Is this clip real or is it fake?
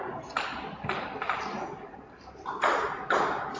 real